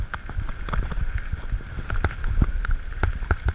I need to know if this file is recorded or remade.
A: recorded